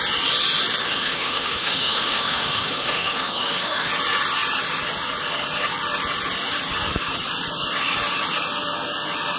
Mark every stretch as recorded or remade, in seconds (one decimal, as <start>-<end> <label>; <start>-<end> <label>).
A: 0.0-0.8 recorded; 0.8-3.9 remade; 3.9-9.4 recorded